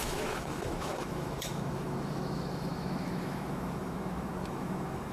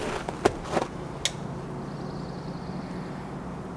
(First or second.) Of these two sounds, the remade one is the first